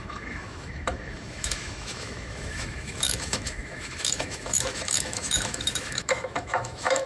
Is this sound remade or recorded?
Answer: remade